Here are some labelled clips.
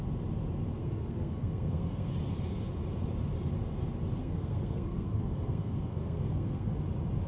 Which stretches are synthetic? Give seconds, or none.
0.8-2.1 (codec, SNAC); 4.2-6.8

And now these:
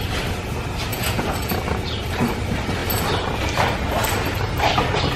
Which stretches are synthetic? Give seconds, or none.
0.9-1.5 (vocoder, Vocos)

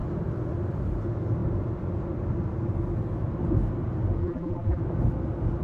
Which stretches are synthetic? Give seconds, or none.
4.2-4.8 (vocoder, BigVGAN v2)

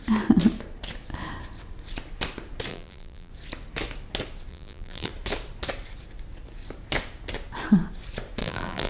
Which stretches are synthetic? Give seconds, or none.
2.7-3.3 (vocoder, BigVGAN v2); 4.5-5.1; 8.4-8.9

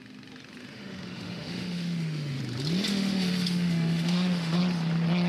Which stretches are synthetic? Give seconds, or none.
0.6-2.4 (autoencoder, DAC-VAE); 2.9-4.6

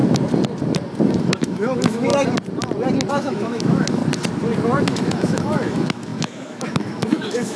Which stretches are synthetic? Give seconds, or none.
1.2-2.1 (autoencoder, DAC-VAE); 3.1-4.0; 4.8-7.6

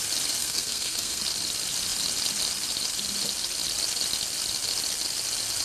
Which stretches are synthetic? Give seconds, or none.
0.4-1.2 (codec, SNAC)